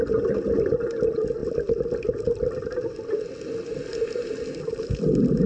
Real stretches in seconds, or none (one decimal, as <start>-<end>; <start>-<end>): 0.0-5.5